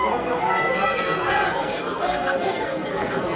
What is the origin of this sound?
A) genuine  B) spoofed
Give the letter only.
B